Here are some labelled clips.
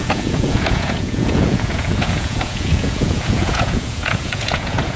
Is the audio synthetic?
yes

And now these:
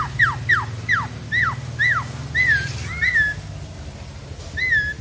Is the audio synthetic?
no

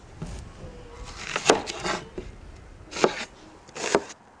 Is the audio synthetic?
no